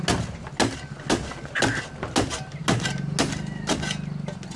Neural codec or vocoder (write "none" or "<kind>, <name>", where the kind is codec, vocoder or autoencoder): none